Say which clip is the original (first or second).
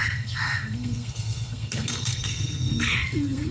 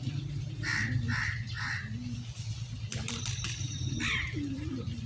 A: second